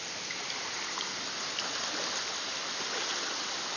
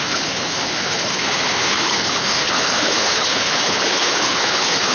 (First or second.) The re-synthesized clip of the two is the second